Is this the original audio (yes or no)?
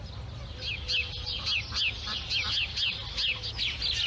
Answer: yes